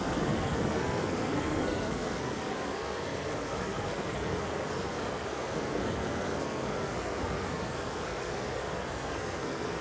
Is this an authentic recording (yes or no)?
no